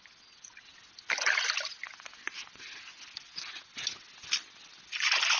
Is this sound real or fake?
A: real